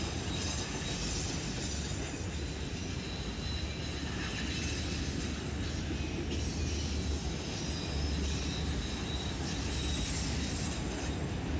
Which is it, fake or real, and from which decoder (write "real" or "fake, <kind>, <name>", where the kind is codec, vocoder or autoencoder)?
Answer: real